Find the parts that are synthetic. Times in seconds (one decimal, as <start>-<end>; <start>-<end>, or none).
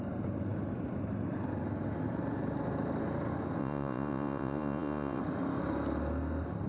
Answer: 3.6-5.2